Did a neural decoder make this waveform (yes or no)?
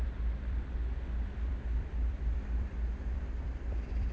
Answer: yes